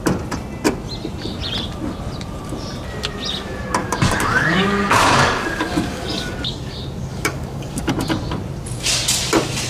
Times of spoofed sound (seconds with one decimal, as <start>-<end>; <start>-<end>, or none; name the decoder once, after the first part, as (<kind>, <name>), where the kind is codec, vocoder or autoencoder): 3.8-6.3 (codec, DAC); 7.1-7.9